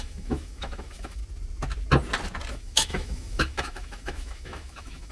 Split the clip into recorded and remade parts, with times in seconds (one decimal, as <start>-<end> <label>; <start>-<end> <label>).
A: 0.0-1.2 remade; 1.2-2.5 recorded; 2.5-5.1 remade

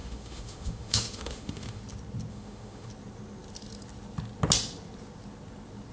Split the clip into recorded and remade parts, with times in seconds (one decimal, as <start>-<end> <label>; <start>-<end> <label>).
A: 0.0-1.8 remade; 1.8-2.3 recorded; 2.3-2.9 remade; 2.9-5.9 recorded